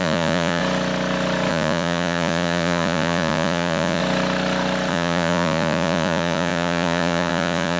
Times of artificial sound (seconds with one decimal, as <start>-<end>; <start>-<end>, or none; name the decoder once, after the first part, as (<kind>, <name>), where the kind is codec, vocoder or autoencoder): 0.0-0.6 (vocoder, Vocos); 1.5-4.0; 4.9-7.8